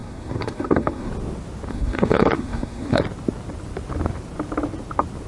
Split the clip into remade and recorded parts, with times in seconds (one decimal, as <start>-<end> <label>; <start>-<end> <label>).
0.0-1.1 remade; 1.1-1.7 recorded; 1.7-3.0 remade; 3.0-5.3 recorded